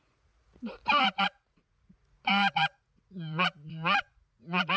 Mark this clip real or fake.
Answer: fake